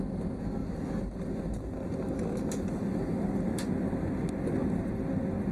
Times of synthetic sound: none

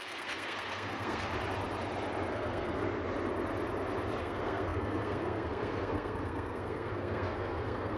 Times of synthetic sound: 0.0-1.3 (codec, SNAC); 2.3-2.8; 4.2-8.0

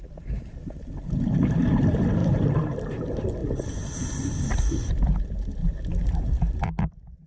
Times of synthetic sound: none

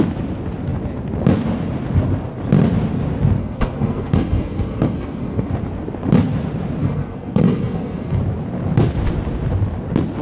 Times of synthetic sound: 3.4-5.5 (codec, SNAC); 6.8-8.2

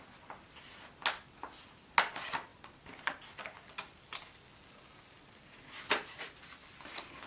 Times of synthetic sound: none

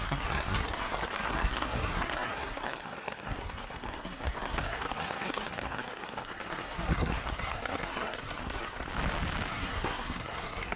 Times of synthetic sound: 0.0-8.9 (codec, SNAC); 9.5-10.8

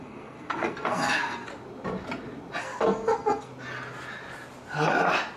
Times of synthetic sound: 0.0-1.5 (codec, SNAC); 2.6-3.5